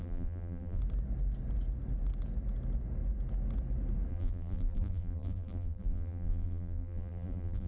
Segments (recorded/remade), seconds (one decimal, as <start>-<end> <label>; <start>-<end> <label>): 0.0-0.8 remade; 0.8-4.1 recorded; 4.1-7.7 remade